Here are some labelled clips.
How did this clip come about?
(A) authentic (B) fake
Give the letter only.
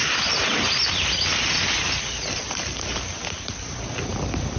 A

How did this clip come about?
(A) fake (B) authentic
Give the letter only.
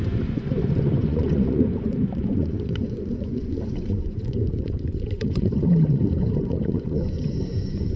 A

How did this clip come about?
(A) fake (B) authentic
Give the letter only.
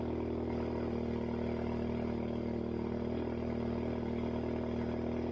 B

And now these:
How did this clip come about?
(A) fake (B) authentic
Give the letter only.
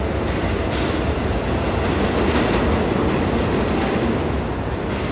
B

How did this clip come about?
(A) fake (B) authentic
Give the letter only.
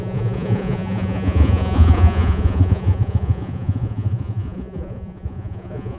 A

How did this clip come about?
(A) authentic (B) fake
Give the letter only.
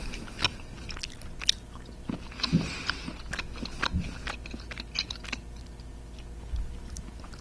A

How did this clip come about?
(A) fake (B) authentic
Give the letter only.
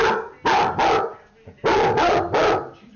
B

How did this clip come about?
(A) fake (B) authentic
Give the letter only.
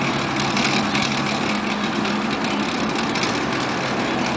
B